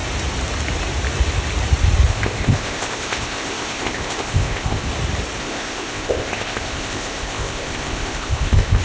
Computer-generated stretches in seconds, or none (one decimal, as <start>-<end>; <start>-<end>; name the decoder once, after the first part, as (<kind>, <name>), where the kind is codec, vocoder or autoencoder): 2.1-4.9 (codec, ZipCodec); 5.4-8.8